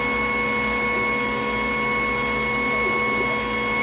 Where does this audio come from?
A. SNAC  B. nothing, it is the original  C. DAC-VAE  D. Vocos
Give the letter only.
B